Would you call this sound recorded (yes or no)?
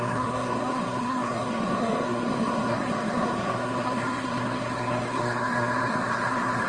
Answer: no